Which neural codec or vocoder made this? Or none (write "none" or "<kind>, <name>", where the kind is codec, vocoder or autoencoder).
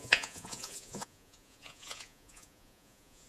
vocoder, Vocos